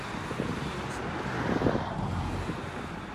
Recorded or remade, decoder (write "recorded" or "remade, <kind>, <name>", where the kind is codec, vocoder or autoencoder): recorded